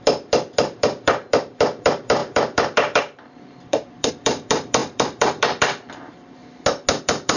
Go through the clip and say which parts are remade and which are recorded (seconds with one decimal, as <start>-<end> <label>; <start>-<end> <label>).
0.0-6.4 remade; 6.4-7.0 recorded; 7.0-7.4 remade